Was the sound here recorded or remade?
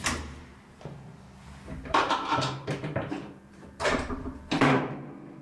remade